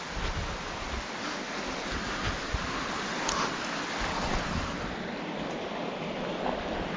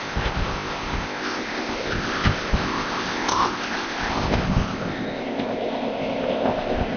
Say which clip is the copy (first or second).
second